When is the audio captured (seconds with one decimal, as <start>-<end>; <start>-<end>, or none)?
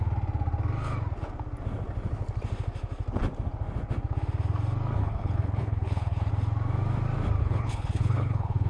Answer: 0.0-5.0; 6.3-7.4